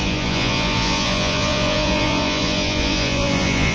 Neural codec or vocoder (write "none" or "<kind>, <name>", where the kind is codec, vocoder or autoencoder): vocoder, Vocos